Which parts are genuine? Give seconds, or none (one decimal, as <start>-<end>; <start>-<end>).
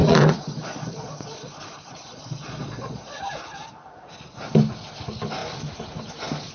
3.3-6.5